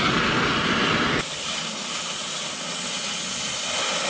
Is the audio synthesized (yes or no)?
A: no